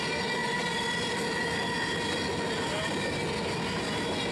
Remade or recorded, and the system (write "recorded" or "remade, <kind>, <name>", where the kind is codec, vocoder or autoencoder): recorded